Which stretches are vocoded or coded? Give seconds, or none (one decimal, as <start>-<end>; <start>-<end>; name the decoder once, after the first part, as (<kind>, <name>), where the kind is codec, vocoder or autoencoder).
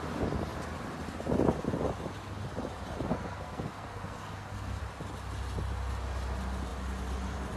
3.1-4.8 (codec, SNAC)